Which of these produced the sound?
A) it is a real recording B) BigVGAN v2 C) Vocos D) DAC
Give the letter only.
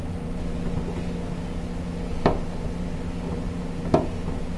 A